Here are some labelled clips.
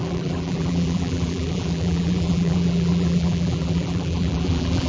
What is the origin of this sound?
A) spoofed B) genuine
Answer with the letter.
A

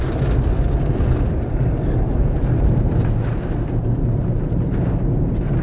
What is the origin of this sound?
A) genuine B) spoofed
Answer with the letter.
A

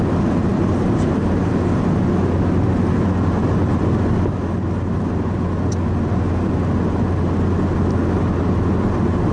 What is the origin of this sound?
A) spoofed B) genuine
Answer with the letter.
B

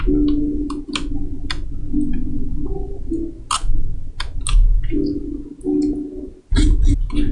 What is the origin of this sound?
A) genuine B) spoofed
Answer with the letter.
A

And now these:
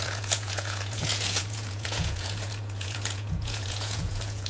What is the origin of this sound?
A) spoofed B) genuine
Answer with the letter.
A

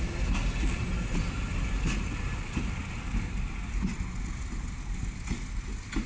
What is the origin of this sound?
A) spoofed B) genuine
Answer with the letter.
B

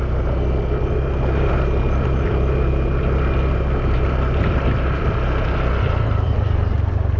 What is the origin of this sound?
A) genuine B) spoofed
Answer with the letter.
A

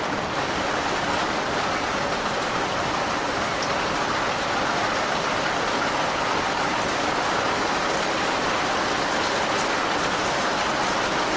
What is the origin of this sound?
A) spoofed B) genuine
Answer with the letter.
B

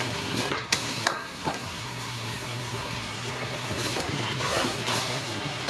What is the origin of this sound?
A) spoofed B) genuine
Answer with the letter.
A